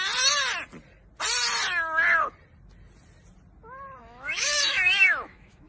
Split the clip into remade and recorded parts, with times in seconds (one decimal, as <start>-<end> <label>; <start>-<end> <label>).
0.0-4.0 recorded; 4.0-5.7 remade